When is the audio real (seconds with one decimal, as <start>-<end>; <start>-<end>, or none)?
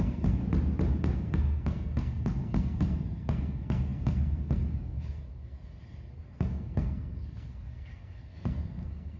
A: 0.4-1.0